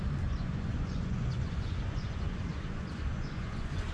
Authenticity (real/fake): fake